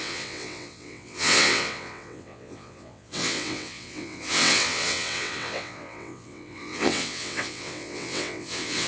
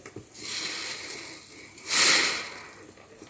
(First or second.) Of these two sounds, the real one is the second